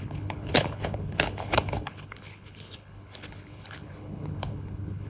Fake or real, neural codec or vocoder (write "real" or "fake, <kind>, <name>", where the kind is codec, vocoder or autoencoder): fake, codec, HILCodec